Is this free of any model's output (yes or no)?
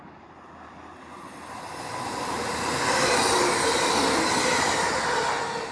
yes